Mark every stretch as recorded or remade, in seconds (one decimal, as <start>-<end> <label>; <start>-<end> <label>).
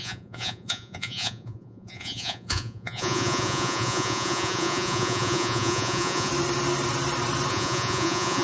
0.0-6.3 remade; 6.3-7.5 recorded; 7.5-8.4 remade